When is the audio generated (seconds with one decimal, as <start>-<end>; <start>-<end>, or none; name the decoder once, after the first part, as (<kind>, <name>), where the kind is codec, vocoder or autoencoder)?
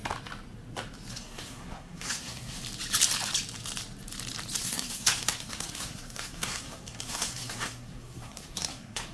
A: 1.1-2.6 (codec, SNAC); 4.6-9.1